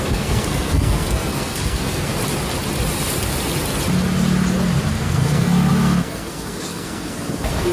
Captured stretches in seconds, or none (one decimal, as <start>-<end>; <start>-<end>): 2.1-4.9